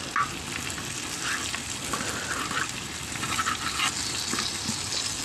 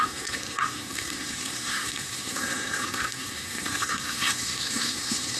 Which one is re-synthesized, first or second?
second